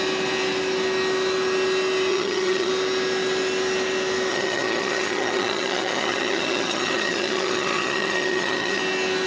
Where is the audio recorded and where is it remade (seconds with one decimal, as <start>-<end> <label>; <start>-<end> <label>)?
0.0-2.1 recorded; 2.1-2.7 remade; 2.7-4.3 recorded; 4.3-8.8 remade; 8.8-9.3 recorded